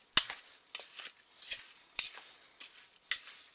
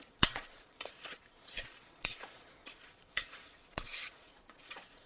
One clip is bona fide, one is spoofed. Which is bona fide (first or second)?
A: first